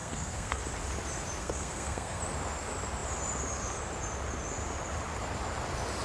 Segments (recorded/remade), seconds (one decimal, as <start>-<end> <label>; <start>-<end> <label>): 0.0-0.6 remade; 0.6-1.4 recorded; 1.4-2.2 remade; 2.2-6.0 recorded